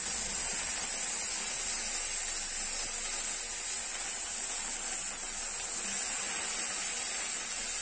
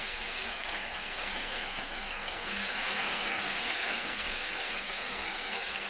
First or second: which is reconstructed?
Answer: second